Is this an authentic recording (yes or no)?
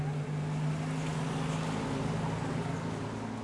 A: yes